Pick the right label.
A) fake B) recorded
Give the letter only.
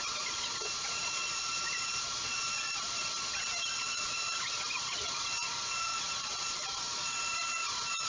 A